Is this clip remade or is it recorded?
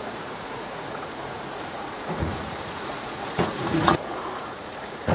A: remade